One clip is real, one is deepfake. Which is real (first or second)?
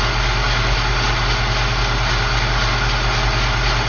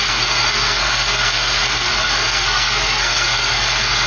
first